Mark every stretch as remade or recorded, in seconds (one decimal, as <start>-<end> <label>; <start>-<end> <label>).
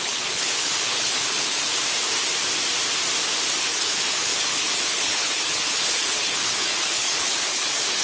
0.0-1.7 remade; 1.7-3.6 recorded; 3.6-8.0 remade